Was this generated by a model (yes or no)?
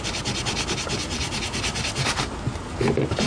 yes